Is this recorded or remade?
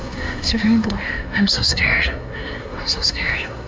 remade